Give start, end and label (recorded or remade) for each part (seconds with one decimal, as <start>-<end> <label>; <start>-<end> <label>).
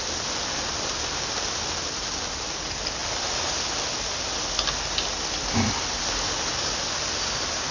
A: 0.0-7.7 recorded